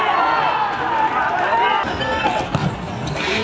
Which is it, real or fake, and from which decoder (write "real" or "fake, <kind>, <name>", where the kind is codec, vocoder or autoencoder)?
real